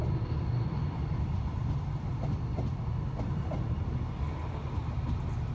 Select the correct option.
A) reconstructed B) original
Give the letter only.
B